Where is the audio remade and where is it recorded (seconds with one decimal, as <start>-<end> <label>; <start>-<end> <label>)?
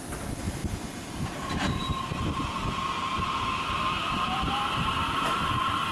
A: 0.0-0.6 remade; 0.6-1.3 recorded; 1.3-5.9 remade